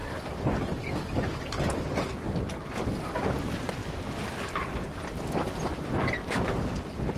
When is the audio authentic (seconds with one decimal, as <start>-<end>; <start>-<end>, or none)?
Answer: 0.0-7.2